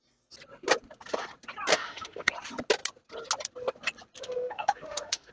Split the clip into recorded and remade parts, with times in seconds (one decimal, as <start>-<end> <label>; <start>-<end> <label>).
0.0-1.7 recorded; 1.7-2.3 remade; 2.3-4.2 recorded; 4.2-5.3 remade